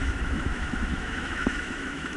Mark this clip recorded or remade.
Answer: remade